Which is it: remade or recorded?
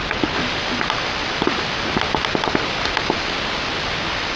recorded